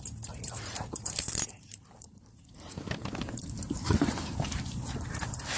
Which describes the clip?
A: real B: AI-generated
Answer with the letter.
B